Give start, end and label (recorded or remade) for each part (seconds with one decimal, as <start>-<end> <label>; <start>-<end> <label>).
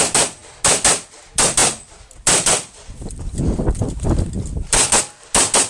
0.0-5.7 recorded